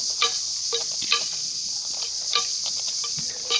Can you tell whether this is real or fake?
fake